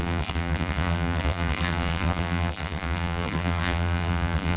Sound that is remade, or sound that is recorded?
remade